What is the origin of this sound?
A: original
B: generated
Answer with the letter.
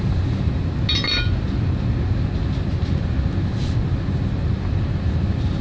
A